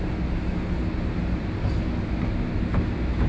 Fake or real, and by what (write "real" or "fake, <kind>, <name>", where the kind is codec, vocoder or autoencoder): real